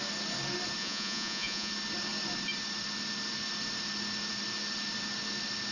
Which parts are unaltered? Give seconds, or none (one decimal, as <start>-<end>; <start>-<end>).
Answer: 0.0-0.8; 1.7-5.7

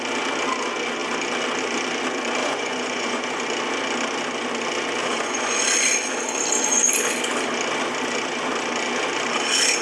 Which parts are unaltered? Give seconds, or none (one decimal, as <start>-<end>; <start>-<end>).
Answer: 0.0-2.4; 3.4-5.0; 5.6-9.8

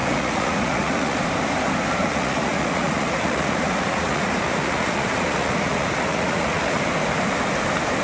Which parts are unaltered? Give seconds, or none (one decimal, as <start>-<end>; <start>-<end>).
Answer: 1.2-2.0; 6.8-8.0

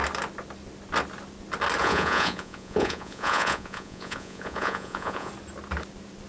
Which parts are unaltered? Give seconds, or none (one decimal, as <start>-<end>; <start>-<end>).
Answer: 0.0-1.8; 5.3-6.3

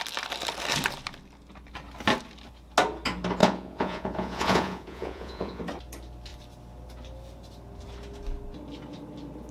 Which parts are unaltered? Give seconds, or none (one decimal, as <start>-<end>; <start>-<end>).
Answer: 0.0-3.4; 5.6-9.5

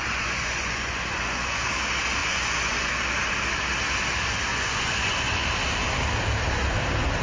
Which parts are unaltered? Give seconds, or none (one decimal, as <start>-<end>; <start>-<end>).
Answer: 1.7-2.2; 2.9-4.5; 5.4-7.2